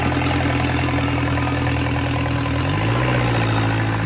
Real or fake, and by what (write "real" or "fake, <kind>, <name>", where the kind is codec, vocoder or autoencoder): real